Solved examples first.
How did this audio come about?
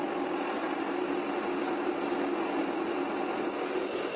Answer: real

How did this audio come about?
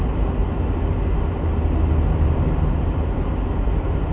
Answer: real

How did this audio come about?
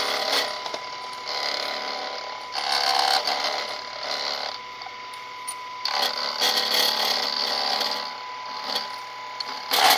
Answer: real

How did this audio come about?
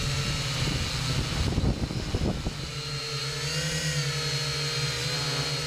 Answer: real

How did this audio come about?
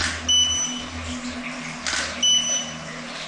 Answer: real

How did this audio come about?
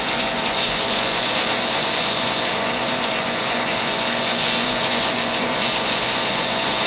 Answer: fake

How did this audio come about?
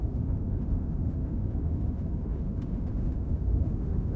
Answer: fake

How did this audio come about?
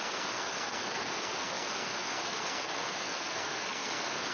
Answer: fake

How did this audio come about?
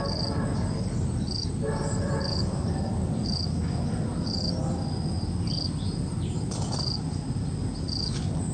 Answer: real